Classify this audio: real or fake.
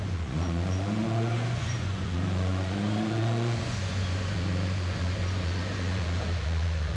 fake